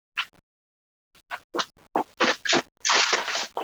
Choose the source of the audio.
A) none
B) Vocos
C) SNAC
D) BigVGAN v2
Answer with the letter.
A